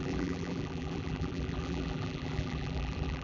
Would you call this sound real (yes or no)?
no